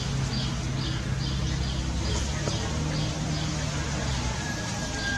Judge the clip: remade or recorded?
recorded